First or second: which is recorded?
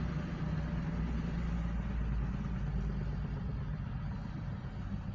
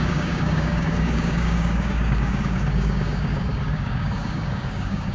first